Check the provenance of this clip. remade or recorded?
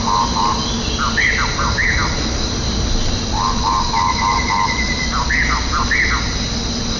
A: recorded